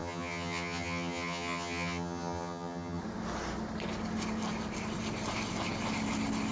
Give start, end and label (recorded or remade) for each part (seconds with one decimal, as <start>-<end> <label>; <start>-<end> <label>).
0.0-3.0 remade; 3.0-6.5 recorded